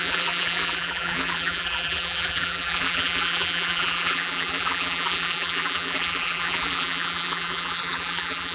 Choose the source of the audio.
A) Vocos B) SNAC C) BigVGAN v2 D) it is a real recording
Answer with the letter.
C